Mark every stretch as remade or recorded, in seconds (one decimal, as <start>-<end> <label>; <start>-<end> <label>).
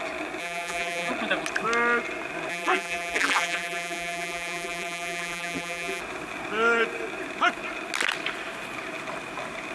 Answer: 0.0-0.4 recorded; 0.4-1.1 remade; 1.1-2.5 recorded; 2.5-6.0 remade; 6.0-9.7 recorded